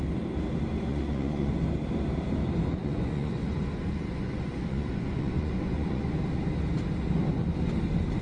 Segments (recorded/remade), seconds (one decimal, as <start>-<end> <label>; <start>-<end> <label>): 0.0-0.9 recorded; 0.9-1.5 remade; 1.5-2.8 recorded; 2.8-6.1 remade; 6.1-8.2 recorded